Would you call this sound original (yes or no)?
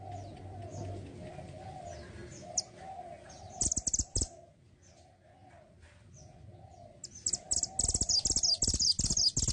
yes